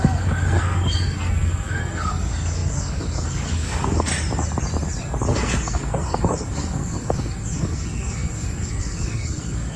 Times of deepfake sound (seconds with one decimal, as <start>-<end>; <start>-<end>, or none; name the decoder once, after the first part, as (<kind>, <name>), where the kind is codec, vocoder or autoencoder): 0.0-4.1 (codec, SNAC); 5.3-9.8